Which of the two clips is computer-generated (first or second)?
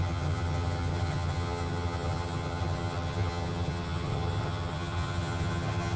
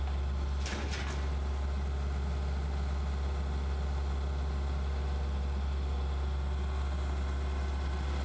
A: first